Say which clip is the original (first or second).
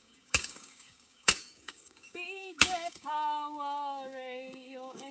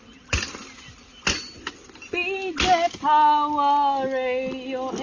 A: second